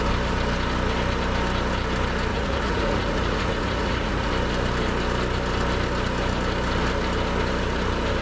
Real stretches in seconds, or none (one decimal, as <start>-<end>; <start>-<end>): 0.0-2.3; 4.3-8.2